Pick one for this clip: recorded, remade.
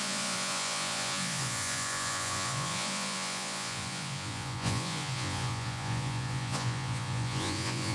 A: remade